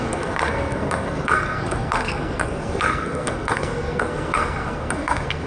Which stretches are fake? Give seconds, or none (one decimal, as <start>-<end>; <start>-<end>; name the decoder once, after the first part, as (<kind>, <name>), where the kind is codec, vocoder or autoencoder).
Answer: 0.0-5.5 (codec, SNAC)